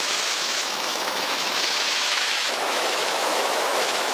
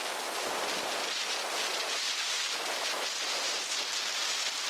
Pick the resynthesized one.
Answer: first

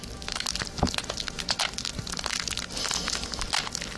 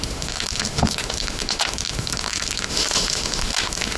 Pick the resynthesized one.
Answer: second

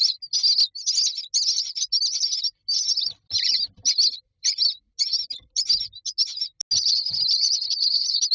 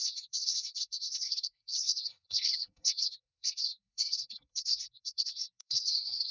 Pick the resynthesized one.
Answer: second